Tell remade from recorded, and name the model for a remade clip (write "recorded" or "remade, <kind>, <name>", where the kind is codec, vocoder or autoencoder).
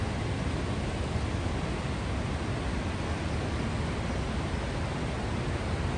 recorded